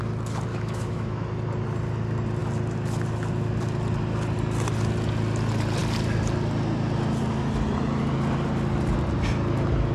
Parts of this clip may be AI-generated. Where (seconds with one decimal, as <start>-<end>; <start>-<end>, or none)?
0.5-1.3